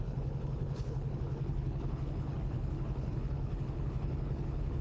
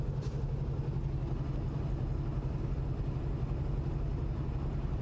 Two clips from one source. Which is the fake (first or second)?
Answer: first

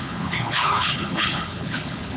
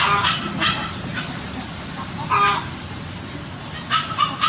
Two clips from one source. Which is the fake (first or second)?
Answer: first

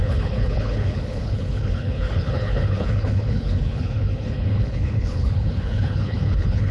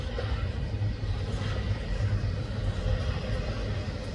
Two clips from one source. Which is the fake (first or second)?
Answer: first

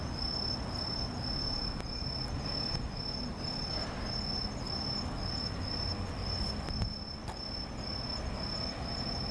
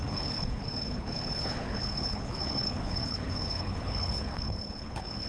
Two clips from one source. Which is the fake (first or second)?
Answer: second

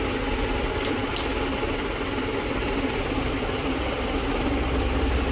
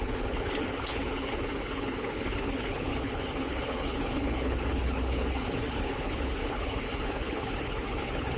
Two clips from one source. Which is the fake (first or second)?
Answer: second